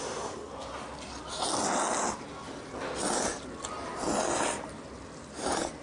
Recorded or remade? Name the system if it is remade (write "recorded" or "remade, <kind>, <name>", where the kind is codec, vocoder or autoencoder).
recorded